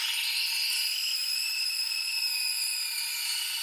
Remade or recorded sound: recorded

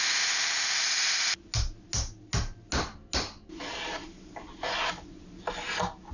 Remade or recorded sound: recorded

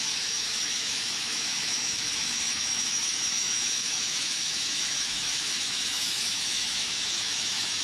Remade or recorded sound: remade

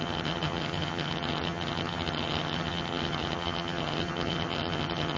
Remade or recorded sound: remade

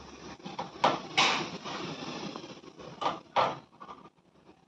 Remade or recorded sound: recorded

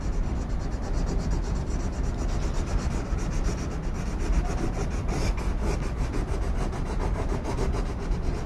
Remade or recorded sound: recorded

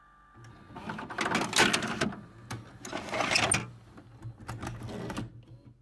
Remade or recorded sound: recorded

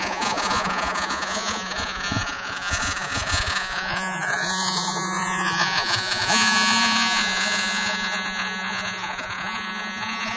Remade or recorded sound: remade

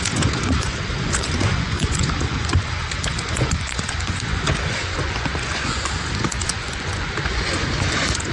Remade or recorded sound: remade